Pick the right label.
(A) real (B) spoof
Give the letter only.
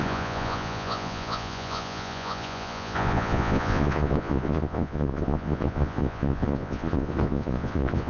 B